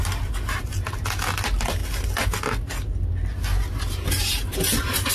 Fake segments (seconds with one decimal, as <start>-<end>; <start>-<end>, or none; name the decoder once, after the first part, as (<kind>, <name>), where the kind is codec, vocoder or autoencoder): none